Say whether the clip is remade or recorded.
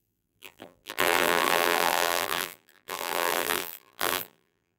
remade